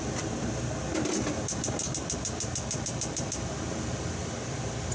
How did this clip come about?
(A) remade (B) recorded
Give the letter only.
B